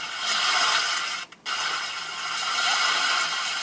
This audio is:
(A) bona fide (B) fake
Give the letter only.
A